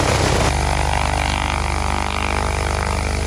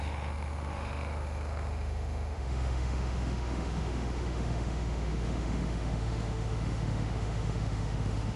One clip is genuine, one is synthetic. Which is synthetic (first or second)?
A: second